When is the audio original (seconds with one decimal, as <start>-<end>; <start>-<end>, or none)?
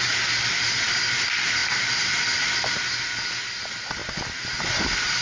0.0-1.6; 2.9-5.2